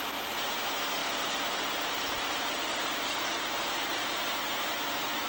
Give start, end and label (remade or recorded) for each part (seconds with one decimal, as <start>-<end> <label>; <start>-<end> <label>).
0.0-1.0 recorded; 1.0-4.2 remade; 4.2-5.3 recorded